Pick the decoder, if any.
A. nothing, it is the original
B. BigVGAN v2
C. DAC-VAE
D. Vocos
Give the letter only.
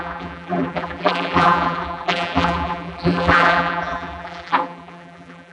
B